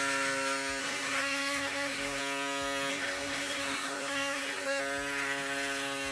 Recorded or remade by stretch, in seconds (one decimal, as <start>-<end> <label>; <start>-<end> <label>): 0.0-0.8 recorded; 0.8-2.2 remade; 2.2-2.9 recorded; 2.9-4.8 remade; 4.8-6.1 recorded